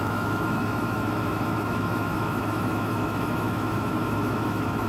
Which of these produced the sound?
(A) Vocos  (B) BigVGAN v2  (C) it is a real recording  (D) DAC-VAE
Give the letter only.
D